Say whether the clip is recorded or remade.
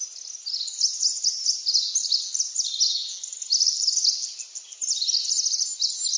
recorded